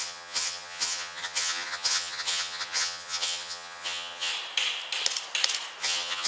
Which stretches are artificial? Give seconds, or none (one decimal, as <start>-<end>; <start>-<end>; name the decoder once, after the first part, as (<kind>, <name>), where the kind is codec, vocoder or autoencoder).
0.0-4.3 (vocoder, HiFi-GAN); 5.8-6.3